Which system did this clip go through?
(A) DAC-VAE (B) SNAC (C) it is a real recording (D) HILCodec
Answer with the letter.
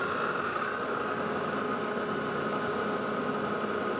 C